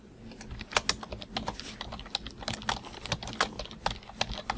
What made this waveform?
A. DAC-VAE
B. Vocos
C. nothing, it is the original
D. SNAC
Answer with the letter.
C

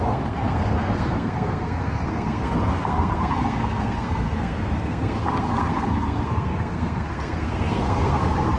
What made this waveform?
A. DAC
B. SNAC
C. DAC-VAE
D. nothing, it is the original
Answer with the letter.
B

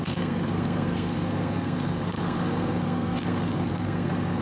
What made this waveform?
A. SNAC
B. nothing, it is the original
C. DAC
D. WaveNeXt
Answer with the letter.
A